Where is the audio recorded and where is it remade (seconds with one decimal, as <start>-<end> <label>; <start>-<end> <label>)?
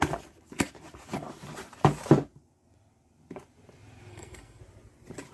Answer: 0.0-4.1 recorded; 4.1-4.6 remade; 4.6-5.3 recorded